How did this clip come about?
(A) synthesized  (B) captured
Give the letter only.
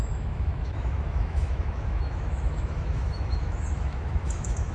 A